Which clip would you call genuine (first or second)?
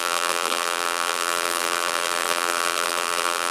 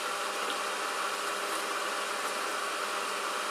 second